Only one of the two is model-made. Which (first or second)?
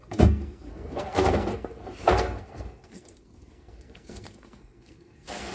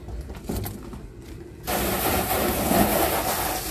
first